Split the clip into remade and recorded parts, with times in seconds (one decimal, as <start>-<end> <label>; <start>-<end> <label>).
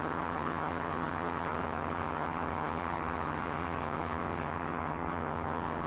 0.0-5.9 remade